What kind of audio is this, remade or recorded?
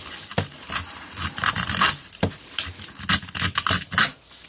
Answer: recorded